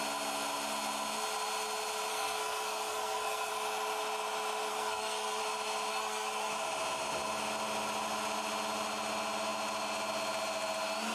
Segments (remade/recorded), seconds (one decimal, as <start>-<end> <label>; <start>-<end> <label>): 0.0-2.1 recorded; 2.1-3.5 remade; 3.5-4.7 recorded; 4.7-5.4 remade; 5.4-5.9 recorded; 5.9-6.5 remade; 6.5-11.1 recorded

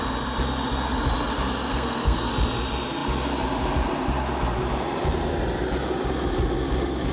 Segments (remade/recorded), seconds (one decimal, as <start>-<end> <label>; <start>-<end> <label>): 0.0-1.7 recorded; 1.7-2.3 remade; 2.3-7.1 recorded

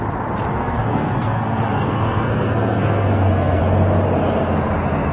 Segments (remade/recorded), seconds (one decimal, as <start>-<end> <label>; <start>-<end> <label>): 0.0-0.5 recorded; 0.5-3.6 remade; 3.6-5.1 recorded

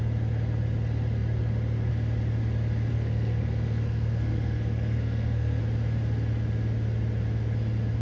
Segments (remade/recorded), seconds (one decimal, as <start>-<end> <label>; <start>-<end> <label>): 0.0-2.9 recorded; 2.9-5.6 remade; 5.6-8.0 recorded

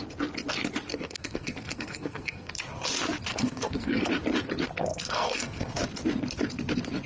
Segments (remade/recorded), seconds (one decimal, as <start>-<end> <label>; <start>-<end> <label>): 0.0-0.9 recorded; 0.9-2.5 remade; 2.5-3.3 recorded; 3.3-4.1 remade; 4.1-4.9 recorded; 4.9-5.7 remade; 5.7-7.1 recorded

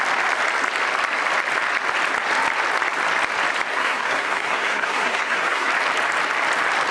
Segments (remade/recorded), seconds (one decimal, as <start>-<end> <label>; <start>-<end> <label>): 0.0-3.7 recorded; 3.7-5.7 remade; 5.7-6.9 recorded

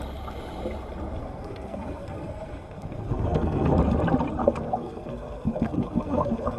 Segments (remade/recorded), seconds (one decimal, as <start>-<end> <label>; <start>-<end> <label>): 0.0-1.2 recorded; 1.2-3.7 remade; 3.7-4.4 recorded; 4.4-6.6 remade

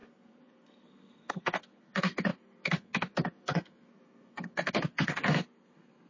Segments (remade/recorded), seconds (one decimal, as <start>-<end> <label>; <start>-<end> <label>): 0.0-6.1 remade